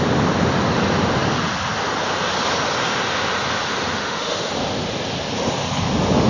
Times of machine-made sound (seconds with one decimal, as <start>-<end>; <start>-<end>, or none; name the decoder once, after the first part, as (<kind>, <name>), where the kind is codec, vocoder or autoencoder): 4.0-4.5 (autoencoder, DAC-VAE)